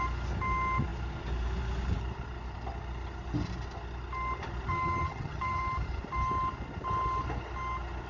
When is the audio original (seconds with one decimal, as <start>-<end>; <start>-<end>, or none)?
0.0-4.7; 5.6-8.1